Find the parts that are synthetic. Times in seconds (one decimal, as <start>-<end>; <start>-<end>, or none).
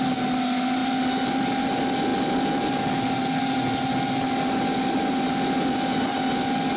none